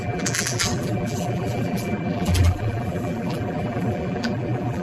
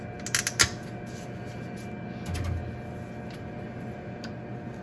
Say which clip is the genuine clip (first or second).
second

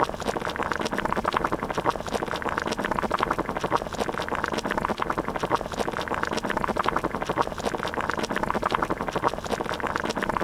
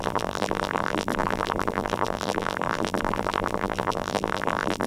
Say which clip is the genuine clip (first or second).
first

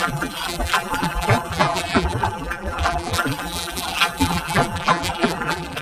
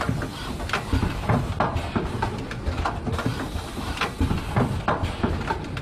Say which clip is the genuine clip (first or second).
second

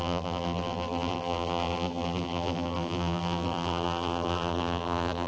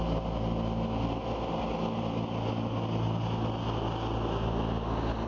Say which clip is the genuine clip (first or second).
second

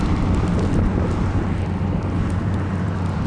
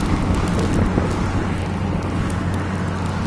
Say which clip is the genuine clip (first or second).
second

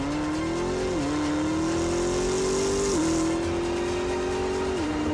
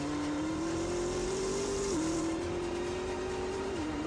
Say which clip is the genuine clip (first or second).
first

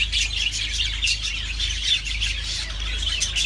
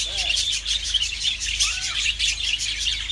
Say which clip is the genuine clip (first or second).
first